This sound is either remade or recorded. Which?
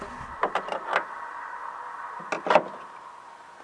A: recorded